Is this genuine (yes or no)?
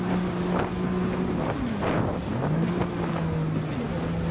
yes